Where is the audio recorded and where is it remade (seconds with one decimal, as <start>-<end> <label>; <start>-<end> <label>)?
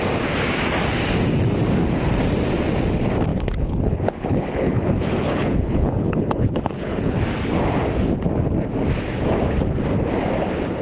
0.0-3.3 recorded; 3.3-7.2 remade; 7.2-10.8 recorded